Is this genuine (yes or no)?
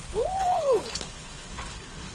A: no